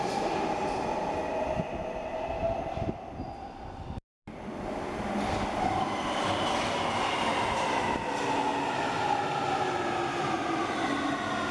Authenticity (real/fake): real